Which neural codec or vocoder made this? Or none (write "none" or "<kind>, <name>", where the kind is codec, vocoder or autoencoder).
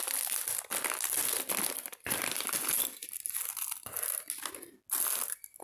none